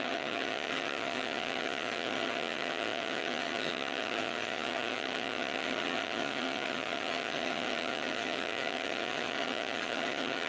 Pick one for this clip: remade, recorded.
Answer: remade